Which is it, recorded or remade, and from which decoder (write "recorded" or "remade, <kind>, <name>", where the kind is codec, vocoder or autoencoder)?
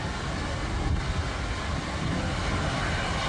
recorded